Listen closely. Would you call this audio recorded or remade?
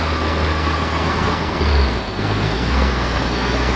remade